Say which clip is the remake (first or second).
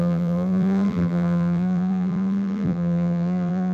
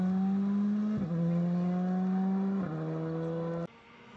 first